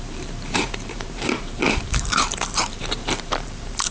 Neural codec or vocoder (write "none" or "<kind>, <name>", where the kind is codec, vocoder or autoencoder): vocoder, BigVGAN v2